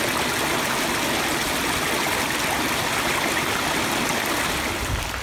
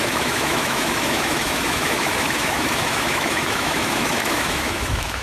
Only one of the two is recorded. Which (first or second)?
first